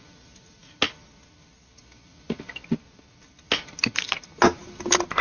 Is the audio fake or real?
real